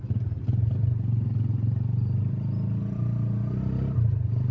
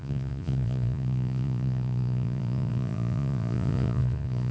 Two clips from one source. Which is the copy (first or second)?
second